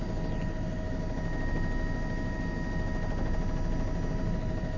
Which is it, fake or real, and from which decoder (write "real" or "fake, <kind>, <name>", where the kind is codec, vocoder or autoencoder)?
real